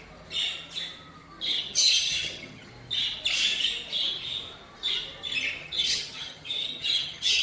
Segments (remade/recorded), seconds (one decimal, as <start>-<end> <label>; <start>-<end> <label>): 0.0-1.5 recorded; 1.5-2.7 remade; 2.7-5.6 recorded; 5.6-7.4 remade